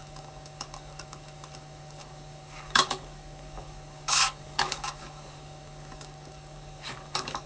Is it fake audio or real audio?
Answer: fake